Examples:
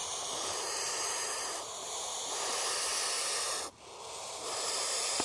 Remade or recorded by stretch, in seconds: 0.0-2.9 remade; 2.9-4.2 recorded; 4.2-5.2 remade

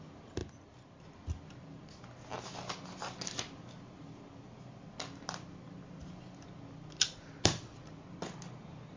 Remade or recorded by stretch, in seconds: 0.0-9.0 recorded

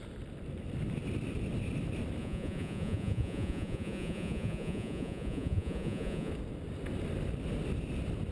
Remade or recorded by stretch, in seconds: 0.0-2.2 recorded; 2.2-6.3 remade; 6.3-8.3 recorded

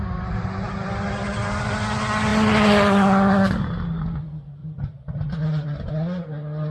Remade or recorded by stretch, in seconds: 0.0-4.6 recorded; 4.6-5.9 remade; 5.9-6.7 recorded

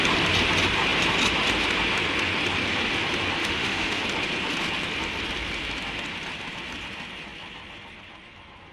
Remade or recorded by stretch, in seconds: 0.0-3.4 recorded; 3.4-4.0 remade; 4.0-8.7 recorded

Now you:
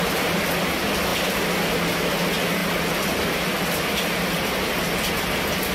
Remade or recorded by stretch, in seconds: 0.0-5.7 recorded

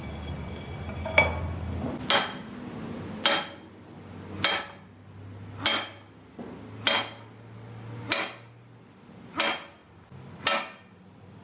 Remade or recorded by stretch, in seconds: 0.0-11.4 recorded

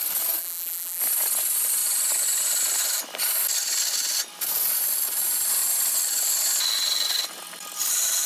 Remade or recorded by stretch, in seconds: 0.0-0.4 recorded; 0.4-1.0 remade; 1.0-8.3 recorded